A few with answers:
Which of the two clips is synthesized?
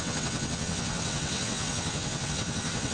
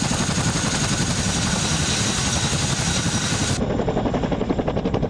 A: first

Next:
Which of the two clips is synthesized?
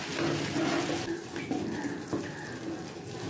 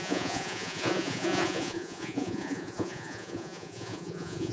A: second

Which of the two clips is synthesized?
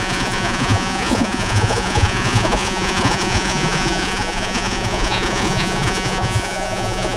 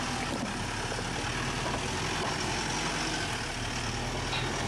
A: first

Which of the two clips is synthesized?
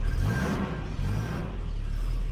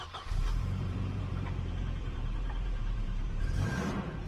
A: second